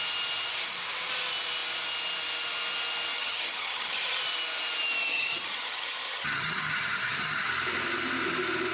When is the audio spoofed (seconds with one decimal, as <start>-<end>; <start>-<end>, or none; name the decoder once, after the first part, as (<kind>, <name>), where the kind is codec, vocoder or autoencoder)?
3.1-4.2 (vocoder, HiFi-GAN); 5.1-7.5